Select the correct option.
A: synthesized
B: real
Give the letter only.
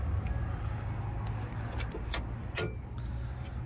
B